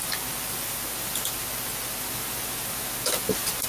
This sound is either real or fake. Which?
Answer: real